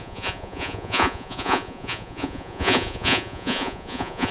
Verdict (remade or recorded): remade